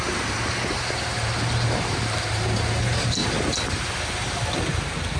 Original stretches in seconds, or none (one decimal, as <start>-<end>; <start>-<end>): 0.0-5.2